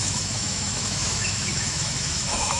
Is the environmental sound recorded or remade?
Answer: remade